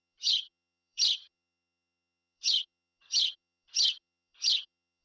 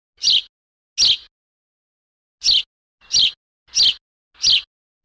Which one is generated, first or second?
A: first